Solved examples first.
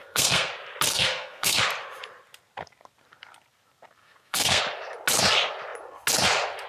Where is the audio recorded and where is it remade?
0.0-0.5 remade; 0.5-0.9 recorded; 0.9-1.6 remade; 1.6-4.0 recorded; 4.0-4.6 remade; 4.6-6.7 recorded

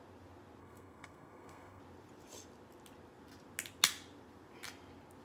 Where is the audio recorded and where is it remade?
0.0-0.6 recorded; 0.6-1.8 remade; 1.8-5.2 recorded

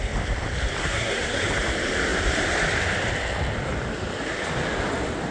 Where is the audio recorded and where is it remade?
0.0-0.8 recorded; 0.8-1.4 remade; 1.4-5.3 recorded

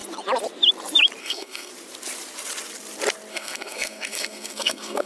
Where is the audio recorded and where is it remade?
0.0-1.2 recorded; 1.2-1.7 remade; 1.7-3.3 recorded; 3.3-5.1 remade

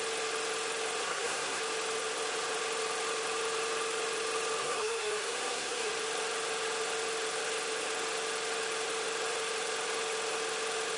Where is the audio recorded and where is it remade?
0.0-1.0 recorded; 1.0-1.6 remade; 1.6-4.6 recorded; 4.6-5.9 remade; 5.9-11.0 recorded

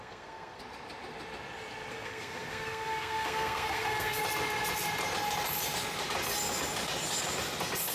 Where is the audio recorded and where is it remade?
0.0-0.6 remade; 0.6-1.9 recorded; 1.9-4.2 remade; 4.2-7.9 recorded

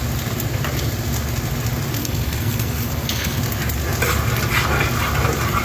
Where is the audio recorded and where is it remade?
0.0-2.0 recorded; 2.0-3.4 remade; 3.4-5.6 recorded

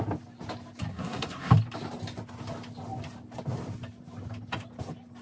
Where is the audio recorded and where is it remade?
0.0-0.9 recorded; 0.9-1.5 remade; 1.5-5.2 recorded